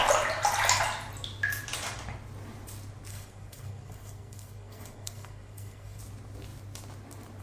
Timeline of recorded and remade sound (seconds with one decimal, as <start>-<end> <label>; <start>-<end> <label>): 0.0-3.1 recorded; 3.1-6.0 remade; 6.0-7.4 recorded